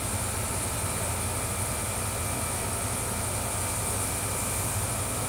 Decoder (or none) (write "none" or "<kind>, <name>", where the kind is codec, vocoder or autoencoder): none